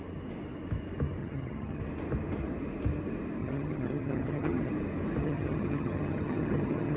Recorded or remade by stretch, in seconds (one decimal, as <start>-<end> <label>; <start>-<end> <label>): 0.0-1.2 recorded; 1.2-1.8 remade; 1.8-3.4 recorded; 3.4-4.7 remade; 4.7-5.2 recorded; 5.2-7.0 remade